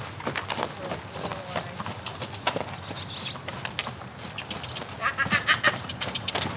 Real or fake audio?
real